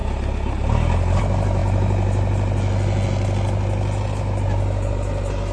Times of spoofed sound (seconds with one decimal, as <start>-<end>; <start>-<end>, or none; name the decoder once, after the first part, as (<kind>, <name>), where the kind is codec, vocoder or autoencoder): none